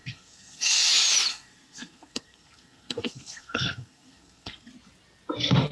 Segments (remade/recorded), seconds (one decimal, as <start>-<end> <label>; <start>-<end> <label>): 0.0-0.9 remade; 0.9-1.3 recorded; 1.3-4.7 remade; 4.7-5.7 recorded